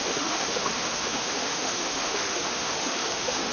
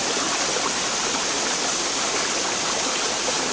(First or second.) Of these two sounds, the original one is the second